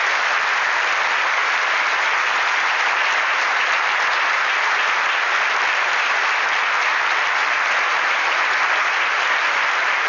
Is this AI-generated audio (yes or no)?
no